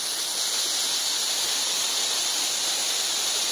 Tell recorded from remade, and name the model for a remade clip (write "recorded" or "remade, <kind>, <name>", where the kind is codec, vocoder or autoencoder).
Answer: recorded